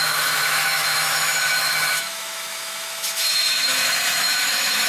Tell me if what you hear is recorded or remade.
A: remade